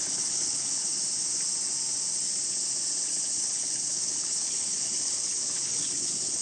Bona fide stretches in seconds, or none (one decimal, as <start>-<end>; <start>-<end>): 0.9-3.0